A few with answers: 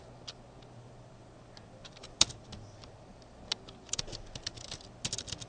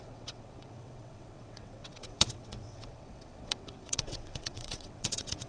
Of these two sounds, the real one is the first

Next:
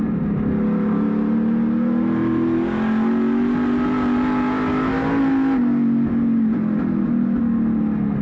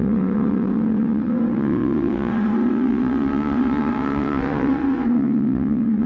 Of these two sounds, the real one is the first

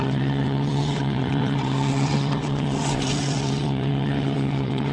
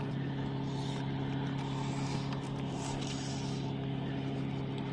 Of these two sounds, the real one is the second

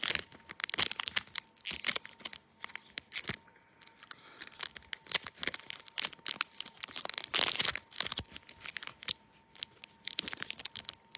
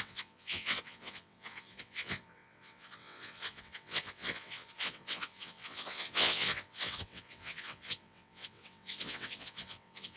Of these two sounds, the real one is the first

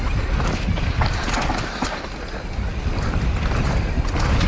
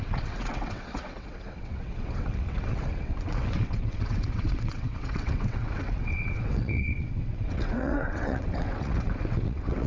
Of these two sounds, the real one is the first